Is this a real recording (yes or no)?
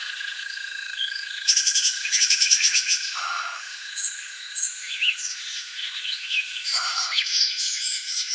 no